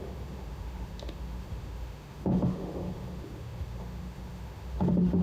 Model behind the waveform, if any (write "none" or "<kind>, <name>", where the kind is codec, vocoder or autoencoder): autoencoder, DAC-VAE